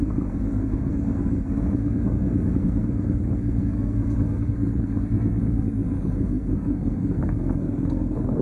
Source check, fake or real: fake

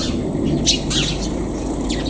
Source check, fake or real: real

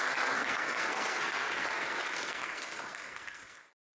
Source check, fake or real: fake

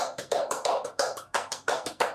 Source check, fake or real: fake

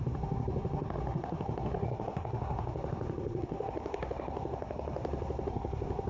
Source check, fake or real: fake